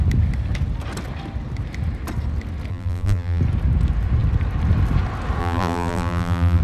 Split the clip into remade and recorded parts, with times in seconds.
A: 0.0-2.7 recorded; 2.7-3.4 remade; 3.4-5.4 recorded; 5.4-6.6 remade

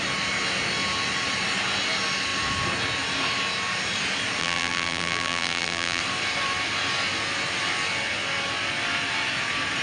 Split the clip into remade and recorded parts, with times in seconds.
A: 0.0-4.4 recorded; 4.4-6.0 remade; 6.0-9.8 recorded

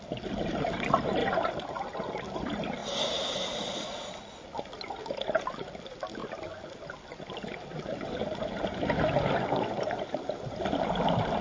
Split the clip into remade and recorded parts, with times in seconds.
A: 0.0-1.2 recorded; 1.2-1.7 remade; 1.7-2.8 recorded; 2.8-4.0 remade; 4.0-7.9 recorded; 7.9-10.1 remade; 10.1-11.4 recorded

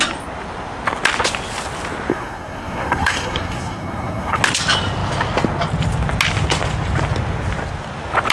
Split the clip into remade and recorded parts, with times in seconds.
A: 0.0-2.1 recorded; 2.1-4.4 remade; 4.4-8.3 recorded

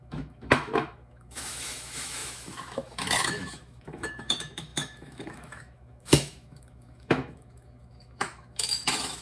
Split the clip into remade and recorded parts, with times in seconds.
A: 0.0-9.2 remade